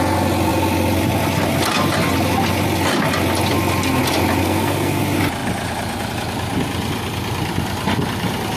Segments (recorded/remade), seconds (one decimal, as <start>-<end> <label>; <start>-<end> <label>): 0.0-4.4 recorded; 4.4-5.0 remade; 5.0-8.6 recorded